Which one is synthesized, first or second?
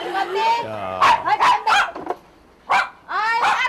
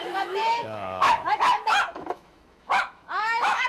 second